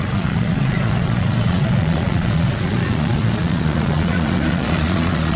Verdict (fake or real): fake